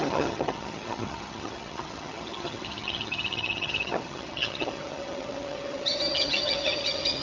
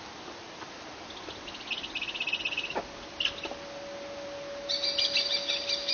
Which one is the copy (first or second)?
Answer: first